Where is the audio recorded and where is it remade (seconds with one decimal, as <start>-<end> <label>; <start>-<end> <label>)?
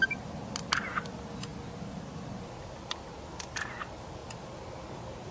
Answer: 0.0-5.3 recorded